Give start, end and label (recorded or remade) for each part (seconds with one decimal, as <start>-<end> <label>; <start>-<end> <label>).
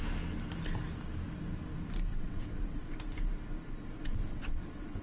0.0-2.1 recorded; 2.1-2.8 remade; 2.8-4.0 recorded; 4.0-5.0 remade